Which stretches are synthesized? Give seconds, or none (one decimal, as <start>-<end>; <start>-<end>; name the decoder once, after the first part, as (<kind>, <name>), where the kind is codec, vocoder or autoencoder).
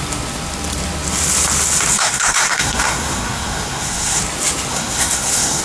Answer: 1.9-4.2 (codec, SNAC); 4.7-5.6